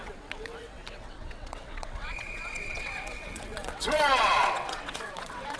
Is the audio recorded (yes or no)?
no